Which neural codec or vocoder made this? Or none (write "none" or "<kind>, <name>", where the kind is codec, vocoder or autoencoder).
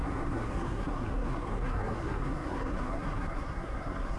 codec, SNAC